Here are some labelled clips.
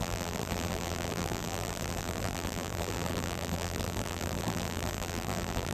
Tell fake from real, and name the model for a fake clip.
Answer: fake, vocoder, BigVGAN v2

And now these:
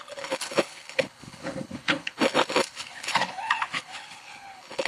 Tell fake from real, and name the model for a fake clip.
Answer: fake, codec, HILCodec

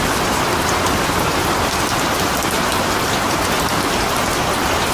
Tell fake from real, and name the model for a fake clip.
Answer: real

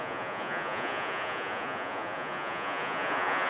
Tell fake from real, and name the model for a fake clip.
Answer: fake, vocoder, Vocos